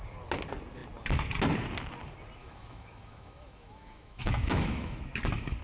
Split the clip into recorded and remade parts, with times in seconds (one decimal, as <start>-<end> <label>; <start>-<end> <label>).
0.0-2.4 recorded; 2.4-5.0 remade; 5.0-5.6 recorded